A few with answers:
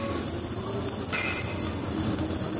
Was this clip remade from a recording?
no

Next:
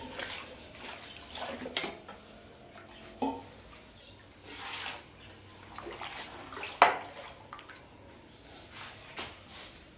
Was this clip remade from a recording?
no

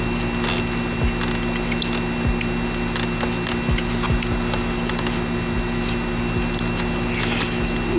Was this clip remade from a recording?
no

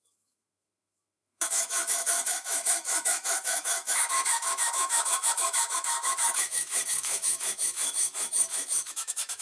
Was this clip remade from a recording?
yes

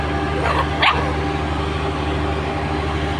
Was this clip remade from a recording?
no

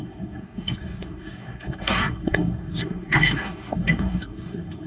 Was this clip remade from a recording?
yes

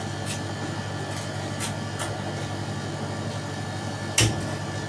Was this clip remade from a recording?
no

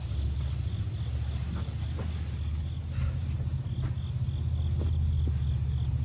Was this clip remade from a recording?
no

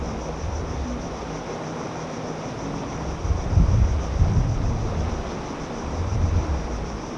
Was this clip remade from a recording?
yes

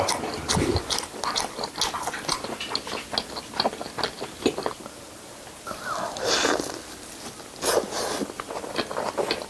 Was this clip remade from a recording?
no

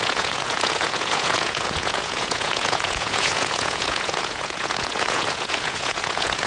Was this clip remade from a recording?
yes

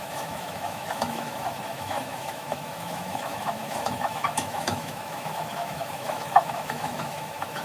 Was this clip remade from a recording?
yes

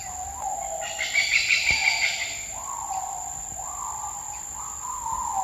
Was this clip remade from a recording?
no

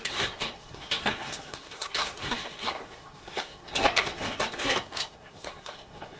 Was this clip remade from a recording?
yes